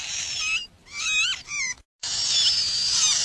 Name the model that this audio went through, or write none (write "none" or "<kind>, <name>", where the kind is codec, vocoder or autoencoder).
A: none